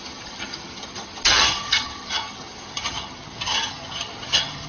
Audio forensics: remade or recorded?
remade